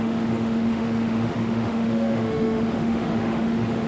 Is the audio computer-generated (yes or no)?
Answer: yes